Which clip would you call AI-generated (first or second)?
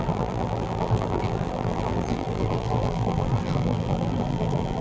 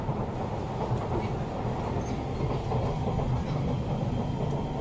first